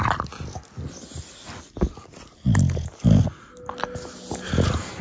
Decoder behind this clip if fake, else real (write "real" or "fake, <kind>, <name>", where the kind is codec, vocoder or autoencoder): real